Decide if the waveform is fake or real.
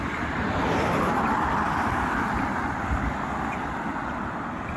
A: fake